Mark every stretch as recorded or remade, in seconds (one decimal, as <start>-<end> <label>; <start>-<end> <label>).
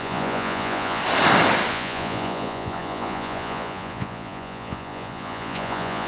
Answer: 0.0-1.0 remade; 1.0-1.7 recorded; 1.7-6.1 remade